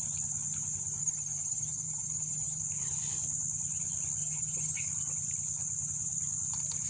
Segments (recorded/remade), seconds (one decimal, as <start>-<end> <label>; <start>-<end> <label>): 0.0-1.0 recorded; 1.0-2.6 remade; 2.6-4.2 recorded; 4.2-4.8 remade; 4.8-6.9 recorded